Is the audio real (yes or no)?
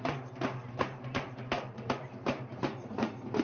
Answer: no